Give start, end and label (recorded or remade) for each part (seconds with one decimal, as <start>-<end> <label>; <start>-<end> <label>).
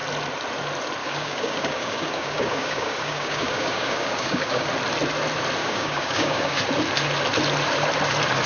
0.0-1.0 recorded; 1.0-4.7 remade; 4.7-5.6 recorded; 5.6-6.6 remade; 6.6-8.5 recorded